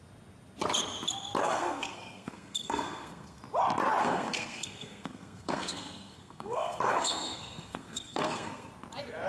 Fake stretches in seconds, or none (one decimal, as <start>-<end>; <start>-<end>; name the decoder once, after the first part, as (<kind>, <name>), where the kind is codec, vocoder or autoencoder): 1.4-3.4 (codec, SNAC); 4.0-8.7